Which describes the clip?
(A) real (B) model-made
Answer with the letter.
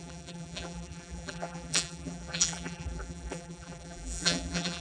B